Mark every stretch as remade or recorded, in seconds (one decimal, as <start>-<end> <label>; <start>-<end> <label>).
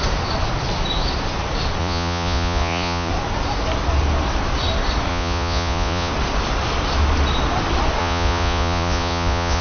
0.0-1.8 recorded; 1.8-3.1 remade; 3.1-5.1 recorded; 5.1-6.1 remade; 6.1-8.0 recorded; 8.0-9.6 remade